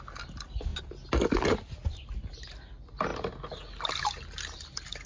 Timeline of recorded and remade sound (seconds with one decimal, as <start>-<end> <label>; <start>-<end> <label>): 0.0-5.1 recorded